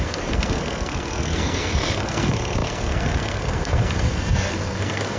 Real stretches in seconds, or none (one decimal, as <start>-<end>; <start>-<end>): none